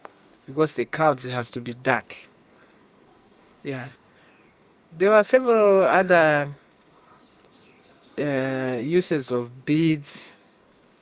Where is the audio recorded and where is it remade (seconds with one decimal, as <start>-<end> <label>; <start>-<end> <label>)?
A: 0.0-11.0 remade